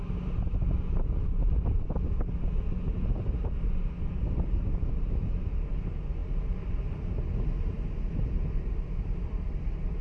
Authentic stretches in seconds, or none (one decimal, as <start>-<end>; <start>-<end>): 0.0-10.0